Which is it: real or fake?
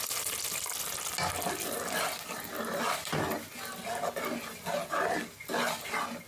real